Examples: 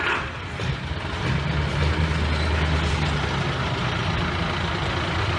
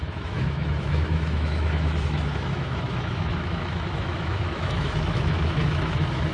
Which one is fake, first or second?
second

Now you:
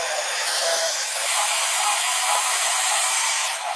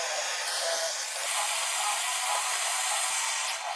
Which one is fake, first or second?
first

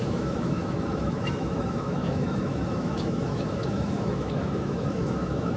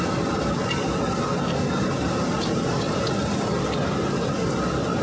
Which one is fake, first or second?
first